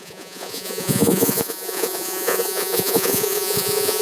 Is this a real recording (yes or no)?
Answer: no